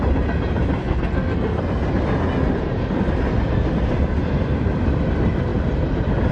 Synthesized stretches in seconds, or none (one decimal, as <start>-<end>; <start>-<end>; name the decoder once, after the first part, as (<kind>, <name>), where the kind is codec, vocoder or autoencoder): 0.8-1.6 (codec, SNAC)